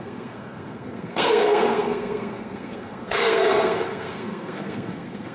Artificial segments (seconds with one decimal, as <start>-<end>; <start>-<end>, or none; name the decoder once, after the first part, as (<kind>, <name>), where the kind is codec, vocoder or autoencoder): 0.0-5.3 (codec, SNAC)